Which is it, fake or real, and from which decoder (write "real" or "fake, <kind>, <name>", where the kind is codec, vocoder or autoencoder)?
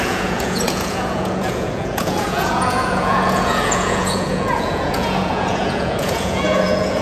fake, vocoder, Vocos